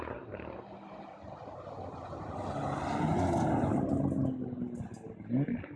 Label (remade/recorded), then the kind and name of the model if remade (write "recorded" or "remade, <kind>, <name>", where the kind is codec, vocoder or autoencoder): recorded